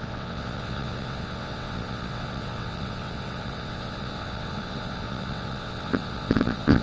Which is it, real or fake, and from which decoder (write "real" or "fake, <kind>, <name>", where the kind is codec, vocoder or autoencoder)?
fake, vocoder, WaveNeXt